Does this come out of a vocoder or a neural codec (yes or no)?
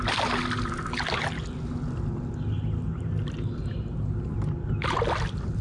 no